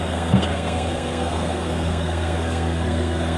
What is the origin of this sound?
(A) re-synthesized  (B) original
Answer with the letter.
A